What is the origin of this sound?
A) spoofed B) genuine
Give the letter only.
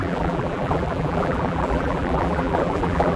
A